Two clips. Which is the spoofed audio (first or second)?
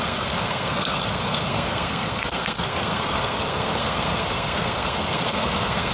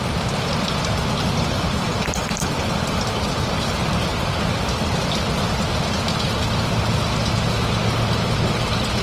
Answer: first